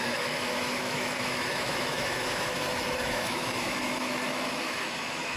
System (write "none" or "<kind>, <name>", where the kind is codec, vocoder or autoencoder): autoencoder, DAC-VAE